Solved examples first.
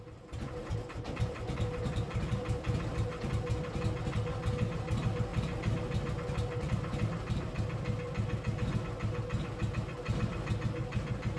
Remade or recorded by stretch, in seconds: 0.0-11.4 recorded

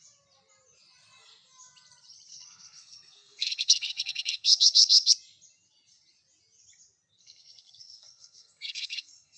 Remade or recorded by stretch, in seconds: 0.0-2.3 recorded; 2.3-5.1 remade; 5.1-7.2 recorded; 7.2-9.4 remade